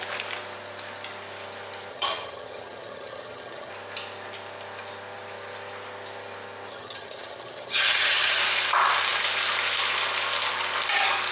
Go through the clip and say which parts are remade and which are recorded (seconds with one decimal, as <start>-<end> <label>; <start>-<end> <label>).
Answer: 0.0-1.9 recorded; 1.9-3.7 remade; 3.7-6.7 recorded; 6.7-8.4 remade; 8.4-11.3 recorded